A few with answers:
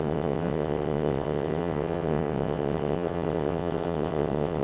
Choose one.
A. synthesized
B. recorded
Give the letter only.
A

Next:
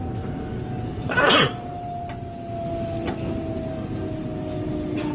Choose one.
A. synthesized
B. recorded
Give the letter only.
B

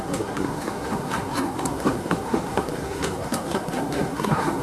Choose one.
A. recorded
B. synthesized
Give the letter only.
B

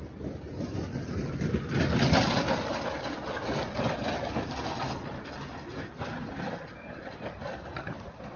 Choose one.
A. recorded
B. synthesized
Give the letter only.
A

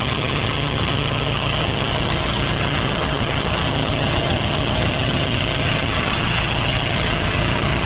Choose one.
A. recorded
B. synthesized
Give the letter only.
B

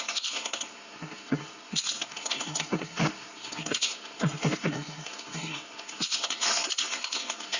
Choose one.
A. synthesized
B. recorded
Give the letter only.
A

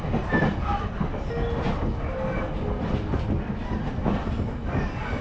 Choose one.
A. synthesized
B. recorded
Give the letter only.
B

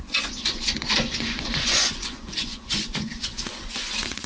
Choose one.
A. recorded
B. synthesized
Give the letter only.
B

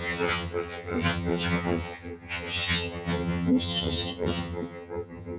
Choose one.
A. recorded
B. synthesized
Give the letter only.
B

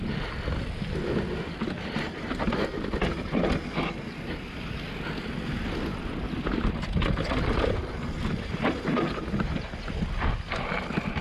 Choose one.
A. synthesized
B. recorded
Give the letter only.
B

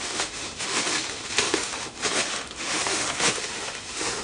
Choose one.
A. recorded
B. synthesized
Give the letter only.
B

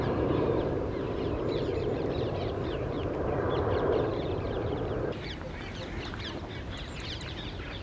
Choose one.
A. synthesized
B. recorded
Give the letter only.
A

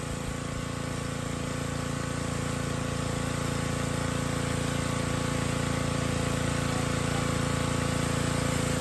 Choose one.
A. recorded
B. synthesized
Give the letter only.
A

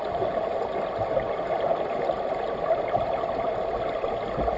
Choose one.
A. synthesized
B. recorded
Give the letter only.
B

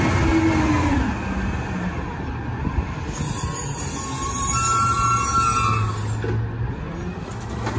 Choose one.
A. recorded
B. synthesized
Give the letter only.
A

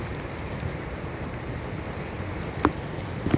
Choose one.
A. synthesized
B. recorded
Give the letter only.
A